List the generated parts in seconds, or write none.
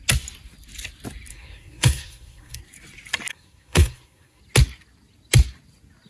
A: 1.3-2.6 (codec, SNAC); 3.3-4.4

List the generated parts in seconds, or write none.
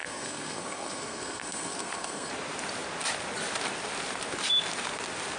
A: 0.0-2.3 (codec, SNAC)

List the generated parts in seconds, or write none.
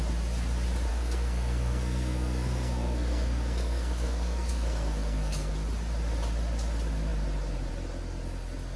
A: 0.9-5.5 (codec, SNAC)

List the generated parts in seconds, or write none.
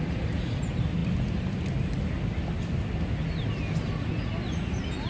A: none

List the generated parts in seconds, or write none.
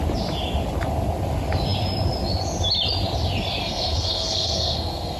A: 3.6-5.2 (codec, SNAC)